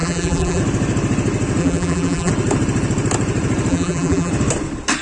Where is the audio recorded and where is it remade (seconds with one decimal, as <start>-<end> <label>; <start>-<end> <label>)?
0.0-0.6 remade; 0.6-1.6 recorded; 1.6-2.3 remade; 2.3-3.7 recorded; 3.7-4.3 remade; 4.3-5.0 recorded